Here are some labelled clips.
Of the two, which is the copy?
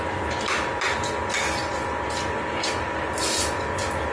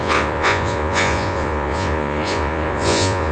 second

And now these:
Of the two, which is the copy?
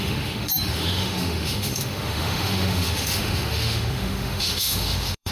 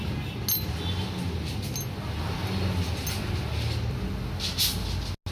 first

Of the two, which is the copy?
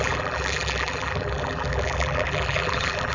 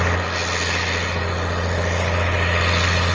first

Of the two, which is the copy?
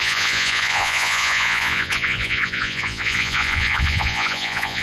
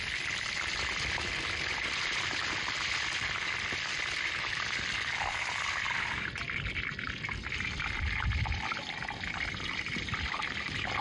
first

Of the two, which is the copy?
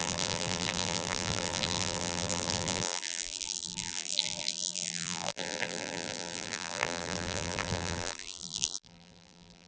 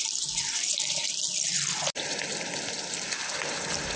first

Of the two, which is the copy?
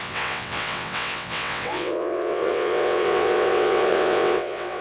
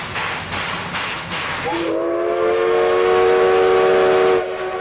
first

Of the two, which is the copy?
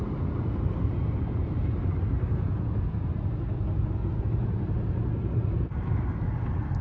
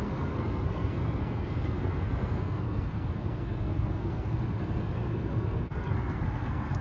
second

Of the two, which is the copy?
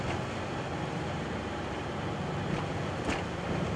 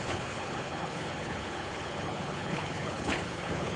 second